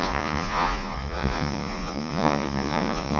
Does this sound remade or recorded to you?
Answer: remade